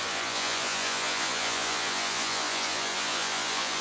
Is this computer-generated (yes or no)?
yes